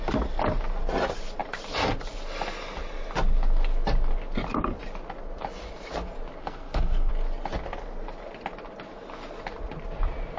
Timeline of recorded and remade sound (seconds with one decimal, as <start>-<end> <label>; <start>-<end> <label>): 0.0-6.4 recorded; 6.4-7.1 remade; 7.1-10.4 recorded

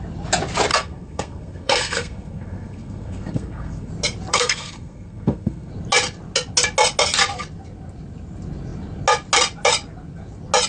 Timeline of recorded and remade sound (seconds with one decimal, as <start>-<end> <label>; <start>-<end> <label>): 0.0-0.7 recorded; 0.7-3.9 remade; 3.9-4.3 recorded; 4.3-5.7 remade; 5.7-10.7 recorded

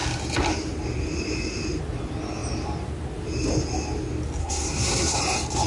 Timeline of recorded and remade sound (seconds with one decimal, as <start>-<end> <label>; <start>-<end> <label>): 0.0-4.4 recorded; 4.4-5.2 remade; 5.2-5.7 recorded

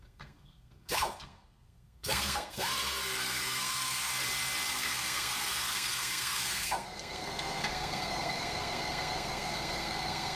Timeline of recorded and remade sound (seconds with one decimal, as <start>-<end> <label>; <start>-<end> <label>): 0.0-4.1 remade; 4.1-4.7 recorded; 4.7-10.4 remade

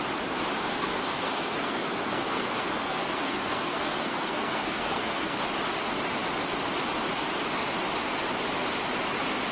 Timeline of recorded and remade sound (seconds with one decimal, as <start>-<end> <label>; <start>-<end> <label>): 0.0-0.7 recorded; 0.7-5.4 remade; 5.4-9.5 recorded

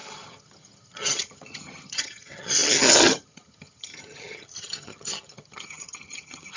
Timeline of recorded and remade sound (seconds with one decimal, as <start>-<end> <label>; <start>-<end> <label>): 0.0-6.6 remade

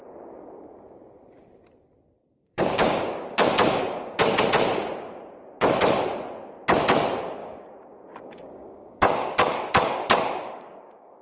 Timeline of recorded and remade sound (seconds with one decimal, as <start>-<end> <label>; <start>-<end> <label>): 0.0-2.2 recorded; 2.2-4.4 remade; 4.4-7.4 recorded; 7.4-11.2 remade